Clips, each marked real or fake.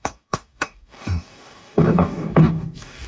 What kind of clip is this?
fake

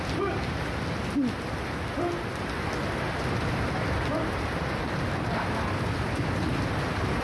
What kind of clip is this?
real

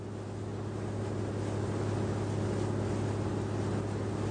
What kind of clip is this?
real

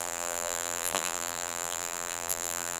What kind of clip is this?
fake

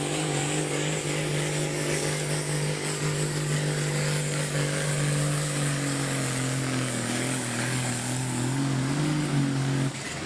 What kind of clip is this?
fake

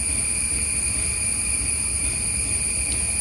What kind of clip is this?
real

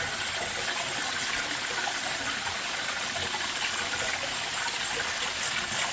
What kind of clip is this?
real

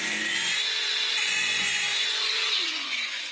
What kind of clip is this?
fake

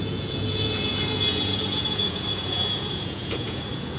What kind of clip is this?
fake